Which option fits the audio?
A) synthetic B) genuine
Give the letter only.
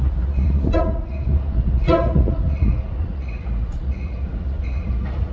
A